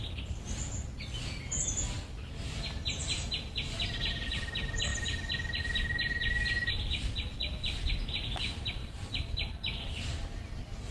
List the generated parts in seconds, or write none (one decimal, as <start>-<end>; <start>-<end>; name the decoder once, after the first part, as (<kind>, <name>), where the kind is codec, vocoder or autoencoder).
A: 8.8-9.5 (vocoder, BigVGAN v2)